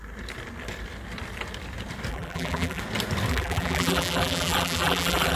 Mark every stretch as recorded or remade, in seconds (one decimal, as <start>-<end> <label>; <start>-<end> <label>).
0.0-2.1 recorded; 2.1-2.8 remade; 2.8-3.3 recorded; 3.3-5.4 remade